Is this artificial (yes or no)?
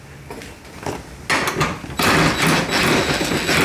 no